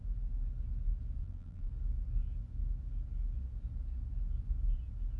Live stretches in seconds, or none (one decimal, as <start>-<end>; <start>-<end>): 0.0-1.2; 1.7-5.2